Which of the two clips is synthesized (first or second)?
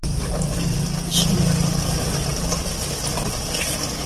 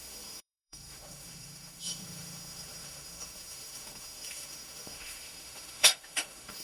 second